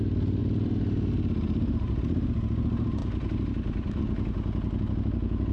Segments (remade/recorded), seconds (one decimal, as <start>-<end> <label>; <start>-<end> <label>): 0.0-0.4 recorded; 0.4-2.0 remade; 2.0-3.0 recorded; 3.0-4.0 remade; 4.0-5.5 recorded